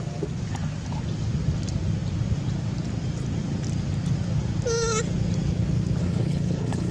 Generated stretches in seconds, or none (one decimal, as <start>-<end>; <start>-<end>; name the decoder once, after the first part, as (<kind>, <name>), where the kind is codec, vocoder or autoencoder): 6.0-6.9 (codec, HILCodec)